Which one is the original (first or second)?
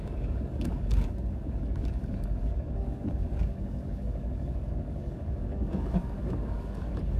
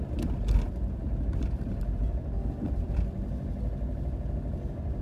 second